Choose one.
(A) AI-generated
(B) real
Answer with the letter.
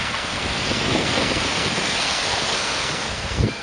A